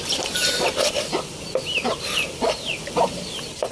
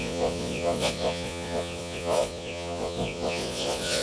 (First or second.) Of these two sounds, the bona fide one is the first